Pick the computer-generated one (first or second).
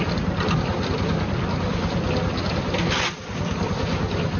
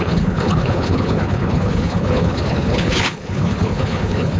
second